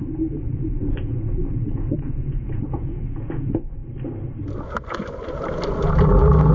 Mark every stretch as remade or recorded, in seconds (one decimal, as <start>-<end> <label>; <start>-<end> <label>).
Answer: 0.0-3.8 remade; 3.8-6.5 recorded